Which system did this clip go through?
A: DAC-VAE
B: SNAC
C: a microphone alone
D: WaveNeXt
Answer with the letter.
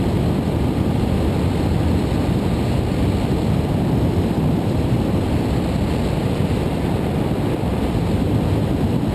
C